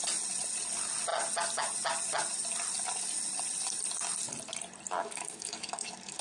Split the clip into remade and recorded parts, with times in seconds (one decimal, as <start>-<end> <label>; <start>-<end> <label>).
0.0-5.0 recorded; 5.0-6.2 remade